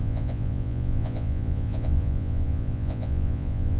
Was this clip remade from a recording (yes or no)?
yes